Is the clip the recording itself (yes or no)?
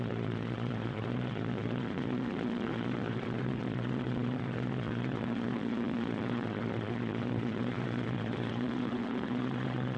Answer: no